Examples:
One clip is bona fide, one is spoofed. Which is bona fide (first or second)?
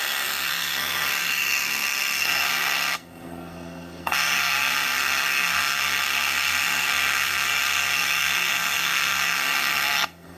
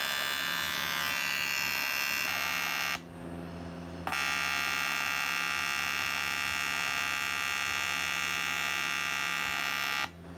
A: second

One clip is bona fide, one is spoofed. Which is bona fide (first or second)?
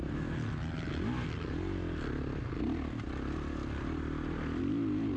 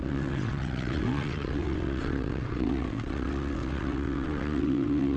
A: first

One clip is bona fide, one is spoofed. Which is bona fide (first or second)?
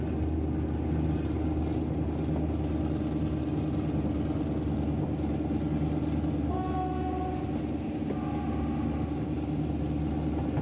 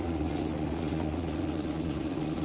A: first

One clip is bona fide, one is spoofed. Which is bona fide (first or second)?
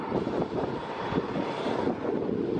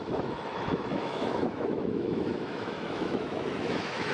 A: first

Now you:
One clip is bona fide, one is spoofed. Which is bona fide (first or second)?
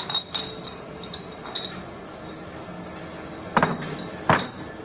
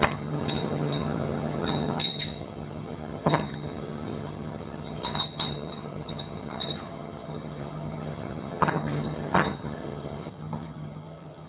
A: first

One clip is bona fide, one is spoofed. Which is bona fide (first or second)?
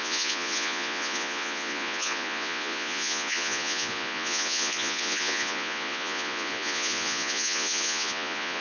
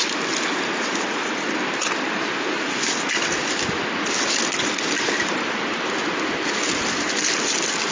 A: second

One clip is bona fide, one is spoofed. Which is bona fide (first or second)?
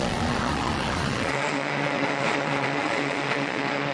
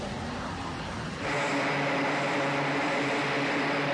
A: second